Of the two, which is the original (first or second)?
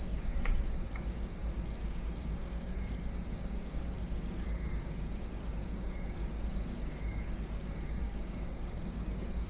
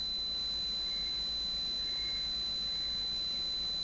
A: second